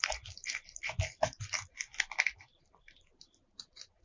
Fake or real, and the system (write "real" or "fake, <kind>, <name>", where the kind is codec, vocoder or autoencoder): real